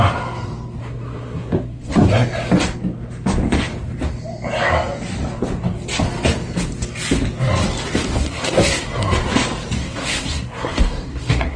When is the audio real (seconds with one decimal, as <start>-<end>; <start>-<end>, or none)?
0.0-0.8; 2.1-8.2; 8.9-9.8